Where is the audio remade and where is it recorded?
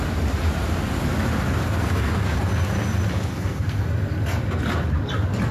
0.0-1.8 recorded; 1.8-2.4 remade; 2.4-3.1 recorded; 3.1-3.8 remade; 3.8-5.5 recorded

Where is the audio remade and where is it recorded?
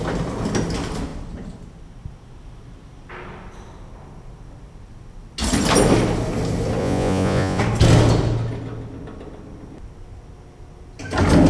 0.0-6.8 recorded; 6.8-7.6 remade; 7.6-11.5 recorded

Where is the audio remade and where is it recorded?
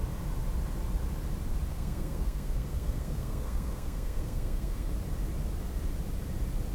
0.0-1.7 recorded; 1.7-4.9 remade; 4.9-6.7 recorded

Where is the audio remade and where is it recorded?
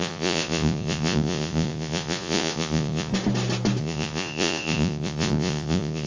0.0-3.1 remade; 3.1-3.8 recorded; 3.8-6.1 remade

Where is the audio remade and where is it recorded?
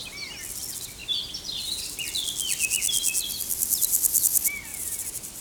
0.0-4.7 recorded; 4.7-5.4 remade